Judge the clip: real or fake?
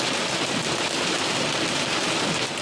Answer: real